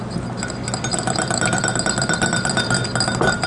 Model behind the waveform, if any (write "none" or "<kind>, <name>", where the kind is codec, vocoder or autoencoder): none